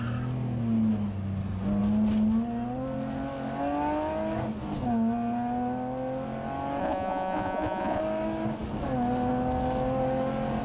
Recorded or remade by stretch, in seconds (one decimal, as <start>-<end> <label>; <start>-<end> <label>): 0.0-6.8 recorded; 6.8-8.0 remade; 8.0-10.6 recorded